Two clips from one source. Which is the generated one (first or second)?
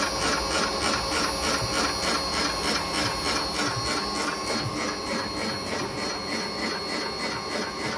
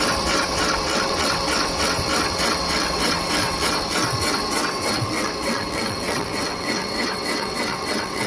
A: second